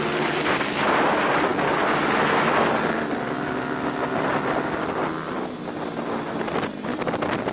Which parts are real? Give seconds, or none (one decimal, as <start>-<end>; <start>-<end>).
0.0-7.5